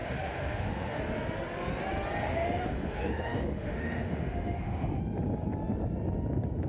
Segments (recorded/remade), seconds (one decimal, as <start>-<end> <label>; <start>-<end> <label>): 0.0-1.0 remade; 1.0-2.2 recorded; 2.2-5.0 remade; 5.0-6.7 recorded